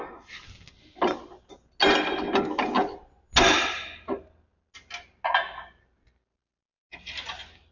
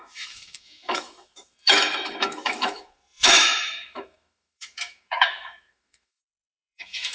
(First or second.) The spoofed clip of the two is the second